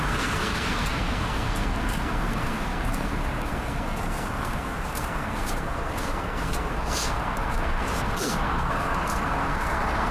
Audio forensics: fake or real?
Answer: fake